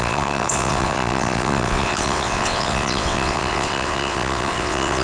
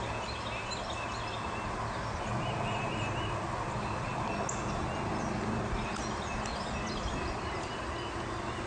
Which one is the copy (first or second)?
first